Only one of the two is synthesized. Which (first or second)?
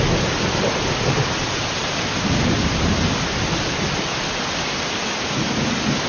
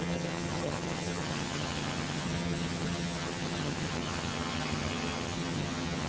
second